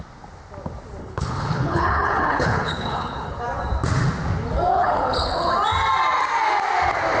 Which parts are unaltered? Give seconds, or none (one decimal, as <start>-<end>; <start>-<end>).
0.0-1.0; 3.4-4.7; 5.5-7.2